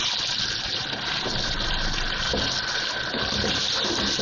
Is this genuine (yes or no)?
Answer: yes